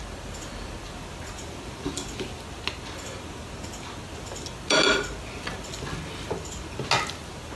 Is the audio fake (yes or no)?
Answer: no